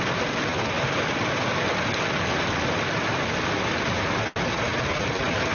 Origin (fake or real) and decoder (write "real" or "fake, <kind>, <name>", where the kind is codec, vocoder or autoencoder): real